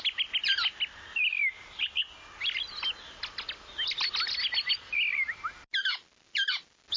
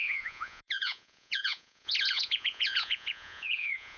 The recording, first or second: first